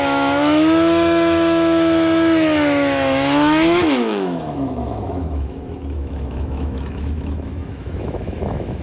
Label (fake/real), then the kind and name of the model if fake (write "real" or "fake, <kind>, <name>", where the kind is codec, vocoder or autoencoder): fake, autoencoder, DAC-VAE